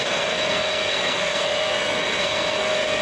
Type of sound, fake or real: fake